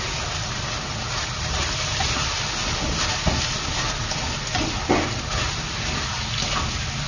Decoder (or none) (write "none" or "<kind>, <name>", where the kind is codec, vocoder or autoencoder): none